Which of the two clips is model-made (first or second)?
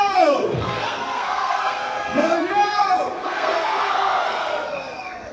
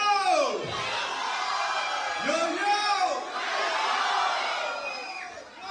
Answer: first